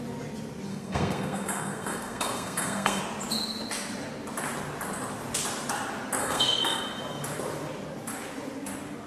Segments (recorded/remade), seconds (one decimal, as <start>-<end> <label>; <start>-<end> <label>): 0.0-0.7 recorded; 0.7-3.0 remade; 3.0-6.2 recorded; 6.2-6.8 remade; 6.8-9.1 recorded